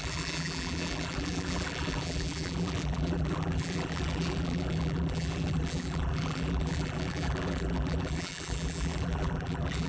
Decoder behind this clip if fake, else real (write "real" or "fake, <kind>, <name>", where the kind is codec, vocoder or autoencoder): fake, vocoder, BigVGAN v2